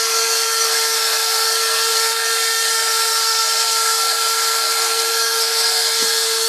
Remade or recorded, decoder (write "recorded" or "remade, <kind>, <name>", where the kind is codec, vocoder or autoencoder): remade, codec, SNAC